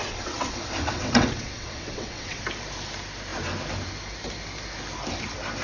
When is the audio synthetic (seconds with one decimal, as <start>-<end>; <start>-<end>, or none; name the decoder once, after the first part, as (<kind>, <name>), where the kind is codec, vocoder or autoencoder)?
0.0-2.4 (vocoder, WaveNeXt)